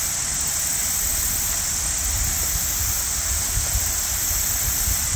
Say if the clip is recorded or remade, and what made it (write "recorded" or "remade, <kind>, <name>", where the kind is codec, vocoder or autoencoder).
recorded